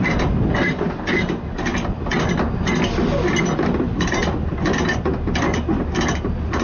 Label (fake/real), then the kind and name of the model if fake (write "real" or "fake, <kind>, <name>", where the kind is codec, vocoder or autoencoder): real